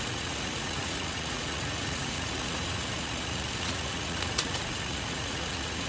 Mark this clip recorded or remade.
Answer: remade